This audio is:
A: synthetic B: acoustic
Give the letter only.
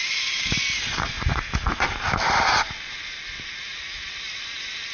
B